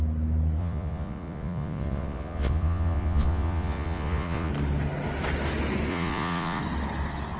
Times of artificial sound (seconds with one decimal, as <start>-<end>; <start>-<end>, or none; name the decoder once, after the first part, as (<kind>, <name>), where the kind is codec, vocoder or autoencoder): 0.6-4.5 (vocoder, Vocos); 5.9-6.6